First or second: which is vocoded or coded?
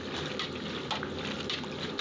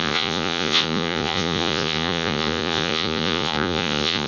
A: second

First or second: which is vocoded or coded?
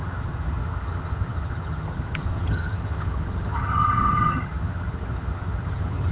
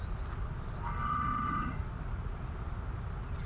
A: first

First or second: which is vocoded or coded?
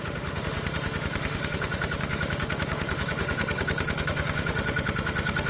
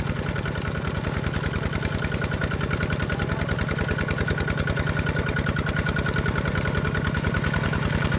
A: first